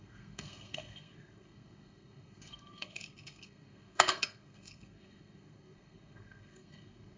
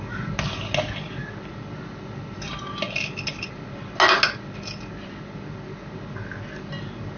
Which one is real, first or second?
second